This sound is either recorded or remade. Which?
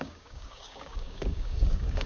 remade